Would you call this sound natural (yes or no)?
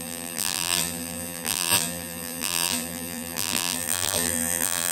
no